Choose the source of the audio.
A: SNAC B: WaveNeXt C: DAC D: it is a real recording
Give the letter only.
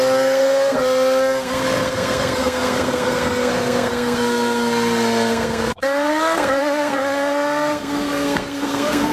A